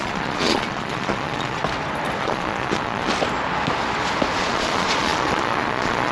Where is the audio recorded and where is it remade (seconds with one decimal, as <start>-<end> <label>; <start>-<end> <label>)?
0.0-1.6 remade; 1.6-2.2 recorded; 2.2-3.1 remade; 3.1-4.4 recorded; 4.4-6.1 remade